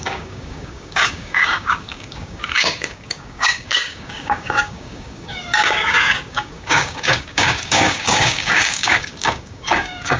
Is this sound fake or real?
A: fake